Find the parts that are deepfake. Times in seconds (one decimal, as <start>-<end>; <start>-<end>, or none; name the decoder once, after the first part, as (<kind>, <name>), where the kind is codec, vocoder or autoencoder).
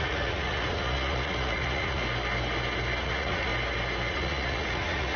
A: 0.0-2.0 (vocoder, Vocos); 3.0-3.5; 4.1-5.2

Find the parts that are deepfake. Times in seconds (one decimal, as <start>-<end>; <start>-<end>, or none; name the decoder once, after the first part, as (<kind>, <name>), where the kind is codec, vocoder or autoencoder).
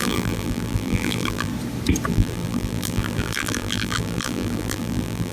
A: 0.0-1.5 (vocoder, BigVGAN v2); 2.1-5.3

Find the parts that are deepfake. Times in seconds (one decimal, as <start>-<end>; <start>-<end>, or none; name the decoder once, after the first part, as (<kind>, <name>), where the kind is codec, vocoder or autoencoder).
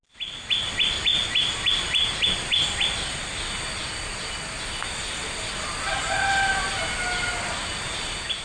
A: none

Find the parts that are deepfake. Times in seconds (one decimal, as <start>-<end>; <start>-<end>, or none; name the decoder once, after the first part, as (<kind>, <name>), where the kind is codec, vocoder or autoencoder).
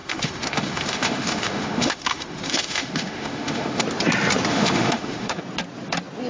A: 0.0-3.8 (autoencoder, DAC-VAE); 4.5-5.4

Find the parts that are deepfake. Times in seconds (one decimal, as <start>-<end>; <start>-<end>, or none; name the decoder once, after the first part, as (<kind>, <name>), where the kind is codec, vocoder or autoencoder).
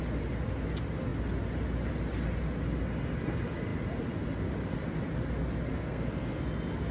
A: 5.7-6.4 (codec, SNAC)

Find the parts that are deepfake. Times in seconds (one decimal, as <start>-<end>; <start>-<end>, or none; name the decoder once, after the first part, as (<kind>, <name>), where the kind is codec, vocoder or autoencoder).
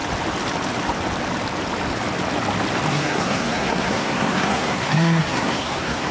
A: 2.9-6.1 (codec, SNAC)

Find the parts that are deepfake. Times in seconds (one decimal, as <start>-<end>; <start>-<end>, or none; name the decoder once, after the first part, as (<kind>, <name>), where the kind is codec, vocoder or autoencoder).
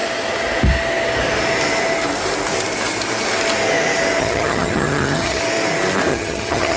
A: 4.2-5.4 (vocoder, HiFi-GAN); 6.1-6.8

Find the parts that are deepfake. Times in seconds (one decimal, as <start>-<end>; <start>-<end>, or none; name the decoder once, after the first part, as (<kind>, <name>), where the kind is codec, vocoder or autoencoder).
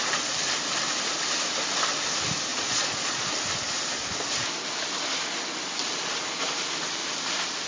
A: 2.5-3.3 (vocoder, Vocos)